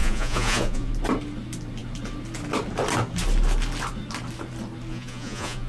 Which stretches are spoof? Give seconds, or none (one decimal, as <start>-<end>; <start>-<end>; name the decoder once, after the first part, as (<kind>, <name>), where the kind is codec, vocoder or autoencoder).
0.0-0.9 (vocoder, Vocos); 4.9-5.7